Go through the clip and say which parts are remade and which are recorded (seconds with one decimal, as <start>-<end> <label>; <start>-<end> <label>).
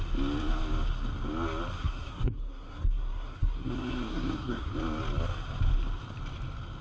0.0-1.8 recorded; 1.8-4.7 remade; 4.7-6.8 recorded